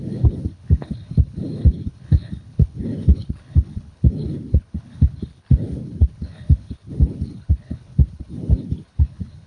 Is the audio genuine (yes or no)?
no